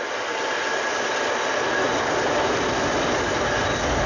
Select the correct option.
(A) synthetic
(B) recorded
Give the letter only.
B